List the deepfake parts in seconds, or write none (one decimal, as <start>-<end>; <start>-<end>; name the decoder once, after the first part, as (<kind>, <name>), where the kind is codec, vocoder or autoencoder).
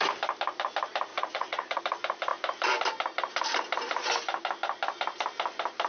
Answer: 1.1-1.8 (vocoder, Vocos)